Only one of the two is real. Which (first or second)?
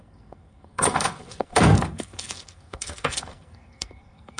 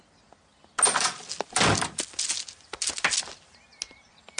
second